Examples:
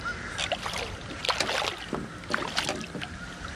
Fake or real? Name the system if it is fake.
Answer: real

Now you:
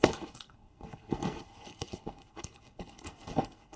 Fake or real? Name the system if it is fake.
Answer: fake, codec, SNAC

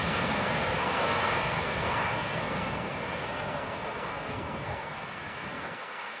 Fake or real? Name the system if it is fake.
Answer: fake, codec, SNAC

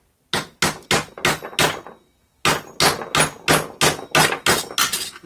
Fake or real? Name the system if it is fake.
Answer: real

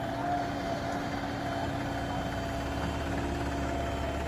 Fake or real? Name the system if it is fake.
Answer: real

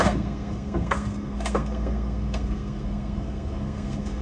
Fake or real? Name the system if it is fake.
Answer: fake, codec, SNAC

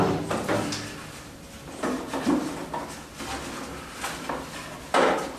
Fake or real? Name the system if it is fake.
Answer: real